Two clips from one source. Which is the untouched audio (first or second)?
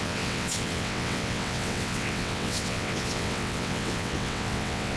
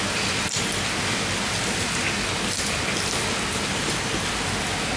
second